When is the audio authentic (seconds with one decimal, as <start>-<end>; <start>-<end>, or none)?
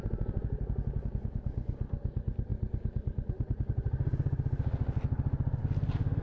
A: 0.0-6.2